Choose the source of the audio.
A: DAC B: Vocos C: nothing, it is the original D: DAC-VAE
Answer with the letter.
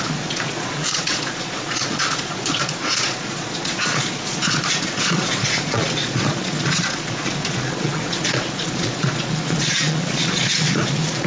B